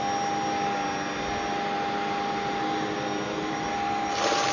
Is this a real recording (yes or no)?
yes